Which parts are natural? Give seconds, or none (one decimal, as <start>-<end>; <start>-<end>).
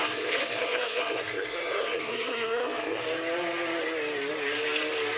3.0-5.2